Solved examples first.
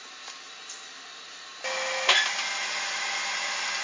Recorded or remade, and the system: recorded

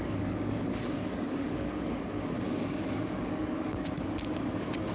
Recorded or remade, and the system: remade, codec, DAC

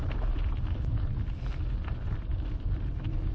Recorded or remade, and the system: recorded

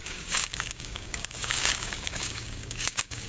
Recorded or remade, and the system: remade, codec, DAC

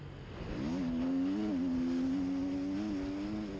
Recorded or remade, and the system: recorded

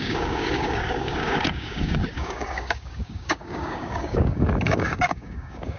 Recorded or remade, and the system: remade, codec, DAC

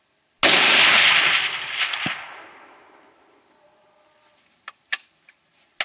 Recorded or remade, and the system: recorded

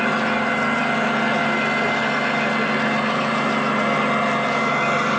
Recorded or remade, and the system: recorded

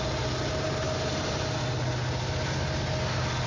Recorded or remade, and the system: recorded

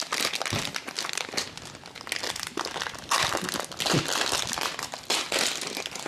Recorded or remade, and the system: recorded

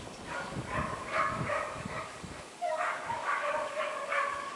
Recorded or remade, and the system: remade, codec, DAC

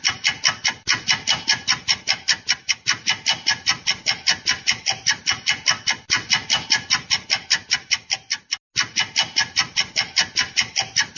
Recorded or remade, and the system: recorded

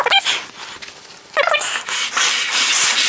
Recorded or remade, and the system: recorded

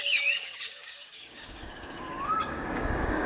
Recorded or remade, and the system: remade, codec, DAC